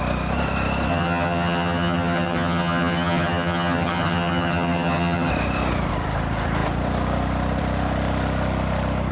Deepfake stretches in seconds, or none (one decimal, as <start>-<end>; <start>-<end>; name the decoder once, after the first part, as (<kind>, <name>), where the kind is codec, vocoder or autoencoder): 0.9-5.3 (vocoder, HiFi-GAN)